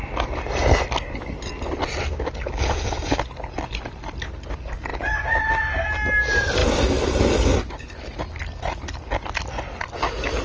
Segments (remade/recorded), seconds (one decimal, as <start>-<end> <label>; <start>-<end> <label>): 0.0-10.4 recorded